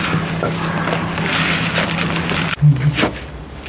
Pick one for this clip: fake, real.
real